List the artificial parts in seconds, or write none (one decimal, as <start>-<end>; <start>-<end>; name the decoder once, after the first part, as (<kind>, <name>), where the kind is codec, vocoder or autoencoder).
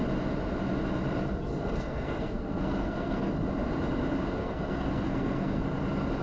1.5-3.3 (codec, SNAC); 4.4-5.6